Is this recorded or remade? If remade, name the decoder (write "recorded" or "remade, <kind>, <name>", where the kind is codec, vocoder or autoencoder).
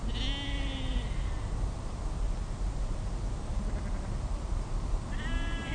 recorded